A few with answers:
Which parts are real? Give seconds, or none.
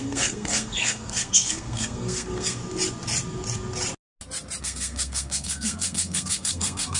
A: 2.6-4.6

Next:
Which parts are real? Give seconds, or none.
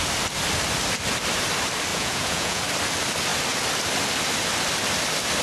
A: 0.0-1.9; 2.6-5.4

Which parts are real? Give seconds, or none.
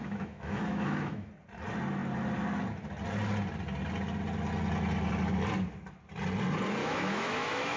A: 1.3-6.8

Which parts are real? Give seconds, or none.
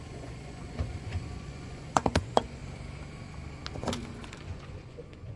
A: 2.6-3.7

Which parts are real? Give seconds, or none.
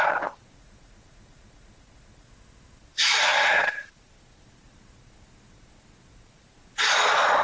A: none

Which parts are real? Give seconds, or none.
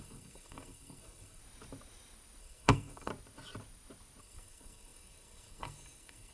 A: 1.4-2.4; 3.1-4.2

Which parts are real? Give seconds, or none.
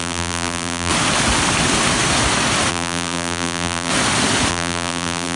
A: 0.9-2.7; 3.9-4.5